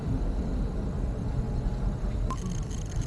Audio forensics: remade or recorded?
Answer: recorded